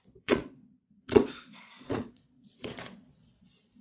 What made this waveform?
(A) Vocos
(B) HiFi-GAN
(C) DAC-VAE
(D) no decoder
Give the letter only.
A